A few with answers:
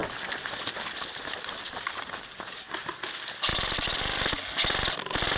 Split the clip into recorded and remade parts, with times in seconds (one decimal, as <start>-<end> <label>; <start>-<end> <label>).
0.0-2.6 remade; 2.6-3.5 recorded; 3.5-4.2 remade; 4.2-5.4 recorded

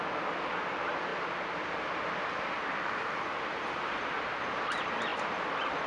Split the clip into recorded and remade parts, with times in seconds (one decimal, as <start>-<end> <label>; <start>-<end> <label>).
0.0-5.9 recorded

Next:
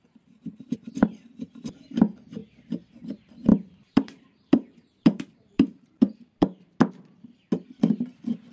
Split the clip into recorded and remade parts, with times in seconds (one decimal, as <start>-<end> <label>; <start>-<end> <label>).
0.0-3.5 recorded; 3.5-6.8 remade; 6.8-8.5 recorded

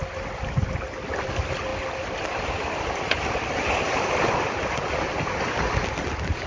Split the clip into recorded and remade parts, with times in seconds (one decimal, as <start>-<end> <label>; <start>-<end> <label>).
0.0-6.5 recorded

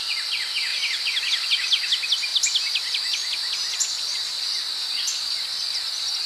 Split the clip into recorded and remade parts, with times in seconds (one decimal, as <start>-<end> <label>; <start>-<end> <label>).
0.0-6.3 recorded

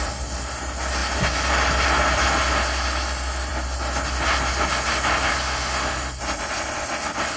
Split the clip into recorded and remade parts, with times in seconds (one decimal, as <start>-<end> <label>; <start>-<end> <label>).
0.0-7.4 recorded

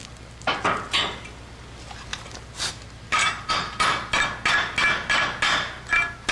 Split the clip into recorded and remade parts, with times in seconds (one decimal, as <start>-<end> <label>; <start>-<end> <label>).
0.0-2.1 recorded; 2.1-3.5 remade; 3.5-6.3 recorded